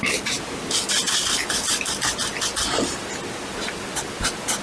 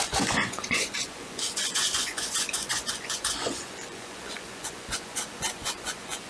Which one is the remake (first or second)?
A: second